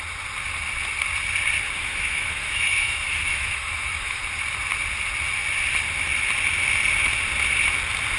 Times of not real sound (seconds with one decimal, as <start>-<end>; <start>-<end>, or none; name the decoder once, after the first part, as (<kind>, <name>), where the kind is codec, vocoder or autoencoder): 1.8-4.2 (autoencoder, DAC-VAE)